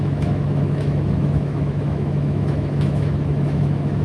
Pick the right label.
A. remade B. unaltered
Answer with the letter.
A